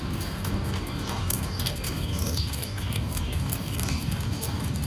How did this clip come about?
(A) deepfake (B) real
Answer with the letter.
A